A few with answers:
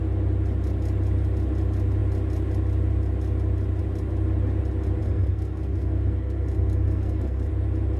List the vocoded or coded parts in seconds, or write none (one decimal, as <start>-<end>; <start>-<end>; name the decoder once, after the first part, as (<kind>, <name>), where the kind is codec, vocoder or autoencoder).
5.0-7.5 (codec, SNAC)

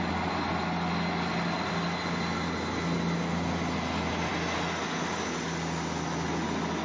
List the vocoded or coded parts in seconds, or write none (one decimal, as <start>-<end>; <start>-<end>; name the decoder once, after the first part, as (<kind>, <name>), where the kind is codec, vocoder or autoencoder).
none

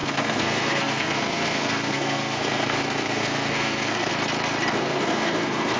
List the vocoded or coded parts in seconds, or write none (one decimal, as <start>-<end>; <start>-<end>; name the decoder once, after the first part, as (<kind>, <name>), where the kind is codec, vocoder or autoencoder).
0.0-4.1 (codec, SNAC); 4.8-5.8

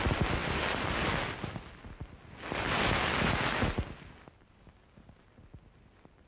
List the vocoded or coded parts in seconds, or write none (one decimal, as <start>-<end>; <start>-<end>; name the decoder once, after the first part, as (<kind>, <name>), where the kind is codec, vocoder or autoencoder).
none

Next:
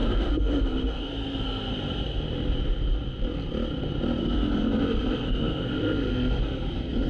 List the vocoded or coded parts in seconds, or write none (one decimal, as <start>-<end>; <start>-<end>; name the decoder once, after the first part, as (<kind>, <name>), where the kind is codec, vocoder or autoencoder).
0.0-1.7 (codec, SNAC); 4.2-7.1

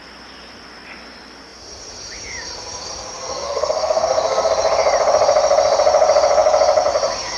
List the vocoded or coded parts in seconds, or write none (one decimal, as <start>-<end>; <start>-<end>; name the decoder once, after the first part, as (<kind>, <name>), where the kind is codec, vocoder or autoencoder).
3.2-4.5 (codec, SNAC)

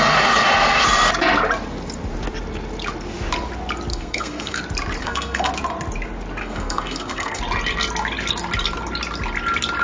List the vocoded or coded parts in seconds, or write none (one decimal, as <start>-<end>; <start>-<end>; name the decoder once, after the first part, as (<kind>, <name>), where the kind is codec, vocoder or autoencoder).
3.9-4.6 (codec, SNAC); 5.0-5.5; 6.4-7.4